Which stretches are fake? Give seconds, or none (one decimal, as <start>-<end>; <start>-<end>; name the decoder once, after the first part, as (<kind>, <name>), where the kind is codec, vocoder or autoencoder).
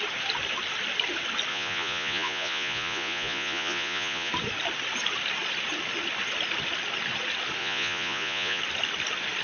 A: 1.5-4.3 (vocoder, Vocos); 7.6-8.6